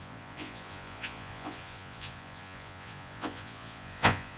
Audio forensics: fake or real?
fake